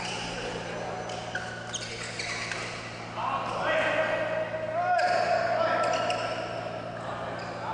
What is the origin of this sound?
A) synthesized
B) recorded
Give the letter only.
B